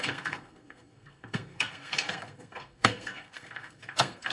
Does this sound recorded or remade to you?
remade